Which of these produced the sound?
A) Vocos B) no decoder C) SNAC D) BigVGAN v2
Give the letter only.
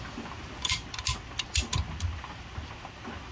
B